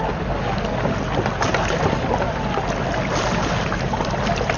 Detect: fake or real real